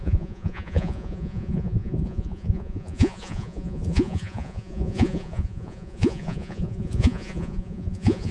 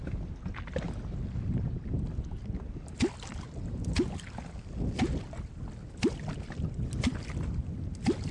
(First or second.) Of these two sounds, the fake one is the first